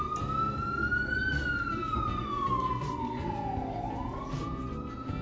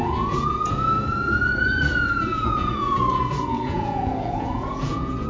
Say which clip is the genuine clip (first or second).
first